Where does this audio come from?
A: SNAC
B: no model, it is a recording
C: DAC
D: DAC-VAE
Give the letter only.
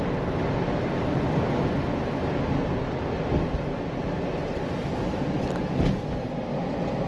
B